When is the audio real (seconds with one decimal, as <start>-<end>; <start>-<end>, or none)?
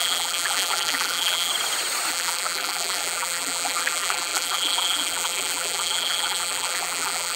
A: 1.5-2.1